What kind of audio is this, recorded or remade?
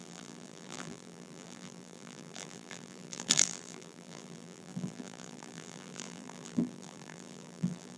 remade